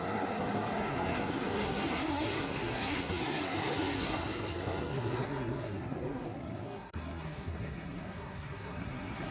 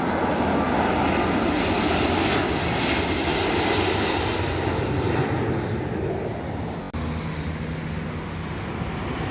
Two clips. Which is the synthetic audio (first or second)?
first